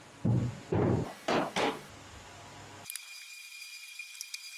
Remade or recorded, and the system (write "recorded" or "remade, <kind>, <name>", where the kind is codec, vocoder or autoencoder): recorded